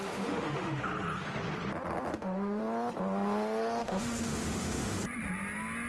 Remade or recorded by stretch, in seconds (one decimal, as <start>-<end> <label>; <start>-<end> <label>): 0.0-0.8 remade; 0.8-2.1 recorded; 2.1-2.6 remade; 2.6-3.8 recorded; 3.8-5.0 remade; 5.0-5.9 recorded